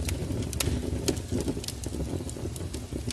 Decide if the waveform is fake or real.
real